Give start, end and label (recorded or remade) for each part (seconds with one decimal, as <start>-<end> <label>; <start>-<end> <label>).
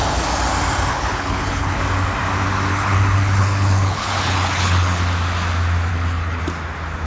0.0-0.9 recorded; 0.9-1.8 remade; 1.8-2.7 recorded; 2.7-5.0 remade; 5.0-5.9 recorded; 5.9-6.4 remade; 6.4-7.1 recorded